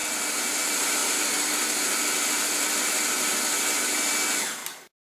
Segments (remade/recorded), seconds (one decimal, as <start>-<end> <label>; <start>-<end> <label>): 0.0-5.2 recorded